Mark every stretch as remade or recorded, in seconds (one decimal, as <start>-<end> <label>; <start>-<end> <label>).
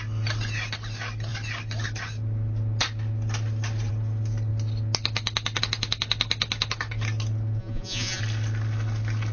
0.0-7.6 recorded; 7.6-8.2 remade; 8.2-9.3 recorded